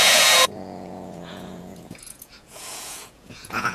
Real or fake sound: fake